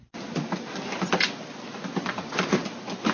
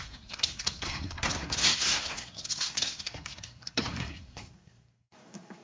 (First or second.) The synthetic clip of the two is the second